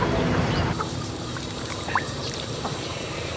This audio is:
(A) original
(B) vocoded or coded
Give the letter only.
B